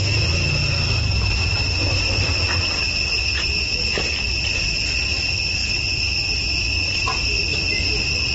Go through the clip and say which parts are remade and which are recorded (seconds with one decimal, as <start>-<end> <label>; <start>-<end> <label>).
0.0-8.3 recorded